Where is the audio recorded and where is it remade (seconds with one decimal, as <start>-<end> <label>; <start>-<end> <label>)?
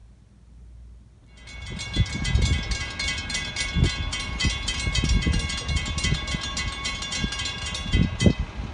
0.0-8.7 recorded